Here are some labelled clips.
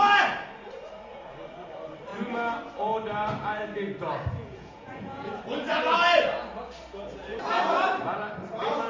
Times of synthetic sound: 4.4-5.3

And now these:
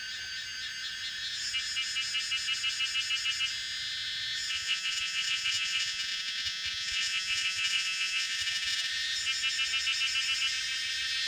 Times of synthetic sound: 4.5-8.9

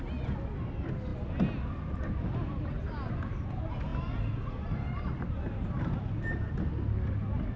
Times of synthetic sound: none